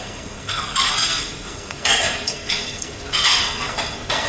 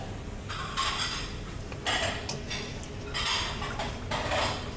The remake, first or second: first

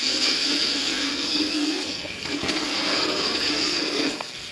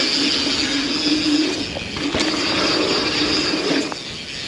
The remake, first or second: first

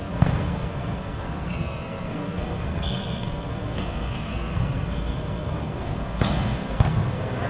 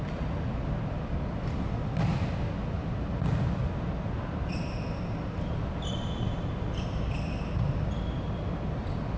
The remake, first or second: first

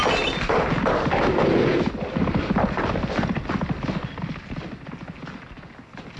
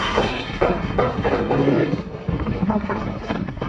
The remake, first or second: second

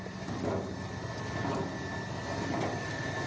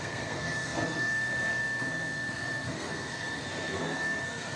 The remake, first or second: second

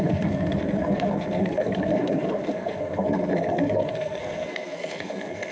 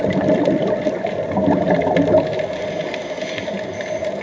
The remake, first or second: first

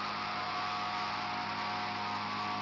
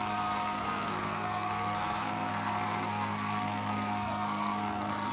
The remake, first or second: second